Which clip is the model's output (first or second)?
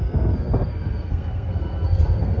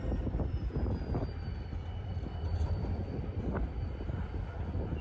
first